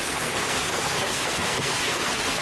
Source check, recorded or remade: remade